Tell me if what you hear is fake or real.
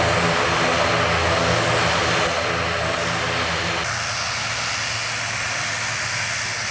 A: real